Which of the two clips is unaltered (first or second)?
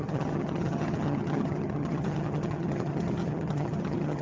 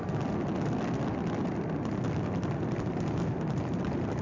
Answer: second